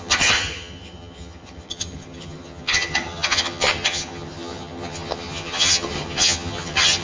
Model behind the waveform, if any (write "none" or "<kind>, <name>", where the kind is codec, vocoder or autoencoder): vocoder, HiFi-GAN